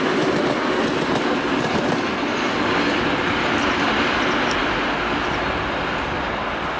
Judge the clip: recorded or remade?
recorded